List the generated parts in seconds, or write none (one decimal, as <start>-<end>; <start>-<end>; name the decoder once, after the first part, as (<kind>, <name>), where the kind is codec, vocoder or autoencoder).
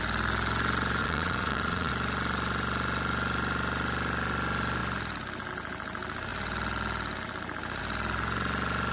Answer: 1.0-1.9 (vocoder, Vocos)